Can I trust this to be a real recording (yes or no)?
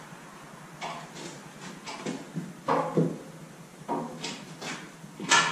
yes